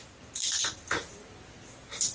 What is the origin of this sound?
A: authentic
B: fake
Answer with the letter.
A